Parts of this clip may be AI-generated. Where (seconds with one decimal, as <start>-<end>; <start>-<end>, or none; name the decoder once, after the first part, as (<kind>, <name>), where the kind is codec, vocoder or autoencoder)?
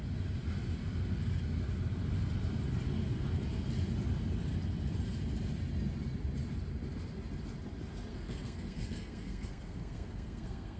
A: 8.1-10.8 (codec, SNAC)